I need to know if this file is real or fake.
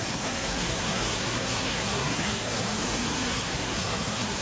fake